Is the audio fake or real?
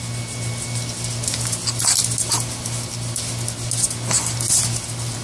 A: real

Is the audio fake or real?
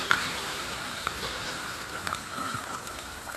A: fake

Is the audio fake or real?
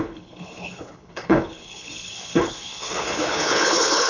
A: fake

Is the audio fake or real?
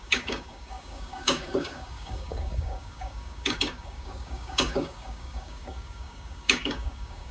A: fake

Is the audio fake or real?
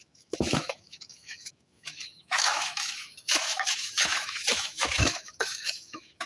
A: fake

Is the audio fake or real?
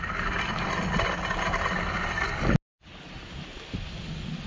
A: real